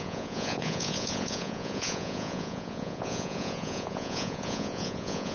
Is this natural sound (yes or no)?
no